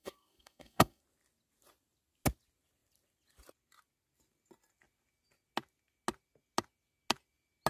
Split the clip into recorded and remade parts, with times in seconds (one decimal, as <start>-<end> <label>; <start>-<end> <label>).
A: 0.0-1.0 remade; 1.0-7.7 recorded